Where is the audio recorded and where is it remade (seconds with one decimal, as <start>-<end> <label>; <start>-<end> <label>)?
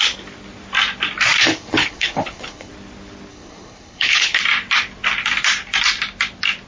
0.0-1.4 recorded; 1.4-2.7 remade; 2.7-3.3 recorded; 3.3-4.4 remade; 4.4-6.7 recorded